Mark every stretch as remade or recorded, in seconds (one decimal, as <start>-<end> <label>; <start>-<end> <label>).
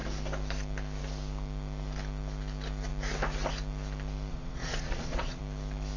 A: 0.0-4.3 recorded; 4.3-5.4 remade; 5.4-6.0 recorded